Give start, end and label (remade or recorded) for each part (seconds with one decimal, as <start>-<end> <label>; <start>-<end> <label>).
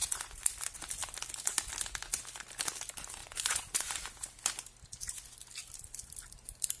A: 0.0-0.5 remade; 0.5-3.2 recorded; 3.2-3.9 remade; 3.9-6.8 recorded